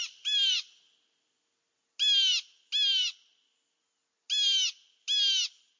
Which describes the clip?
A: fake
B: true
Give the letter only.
B